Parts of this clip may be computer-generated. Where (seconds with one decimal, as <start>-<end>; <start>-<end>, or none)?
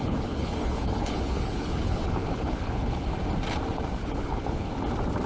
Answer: 0.0-3.1; 4.0-4.7